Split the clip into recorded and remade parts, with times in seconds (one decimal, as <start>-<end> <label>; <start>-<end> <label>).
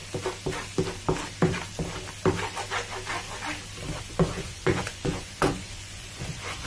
0.0-4.0 recorded; 4.0-6.7 remade